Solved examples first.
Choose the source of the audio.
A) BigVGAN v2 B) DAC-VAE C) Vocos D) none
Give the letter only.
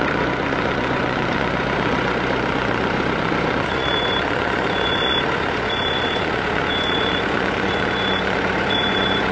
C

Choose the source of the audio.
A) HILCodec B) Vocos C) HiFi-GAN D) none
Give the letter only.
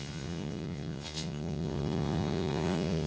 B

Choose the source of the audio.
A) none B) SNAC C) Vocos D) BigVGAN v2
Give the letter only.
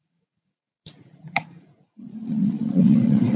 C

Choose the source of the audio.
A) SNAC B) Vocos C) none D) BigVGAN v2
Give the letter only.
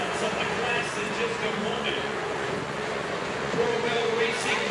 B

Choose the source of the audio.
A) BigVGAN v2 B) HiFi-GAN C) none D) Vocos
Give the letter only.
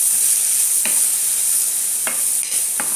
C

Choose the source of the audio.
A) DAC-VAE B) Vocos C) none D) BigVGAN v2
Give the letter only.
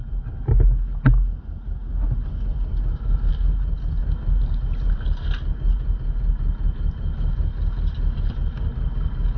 C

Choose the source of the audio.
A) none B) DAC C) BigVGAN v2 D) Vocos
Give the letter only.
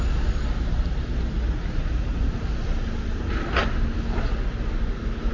A